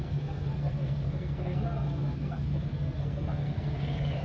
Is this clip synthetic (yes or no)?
yes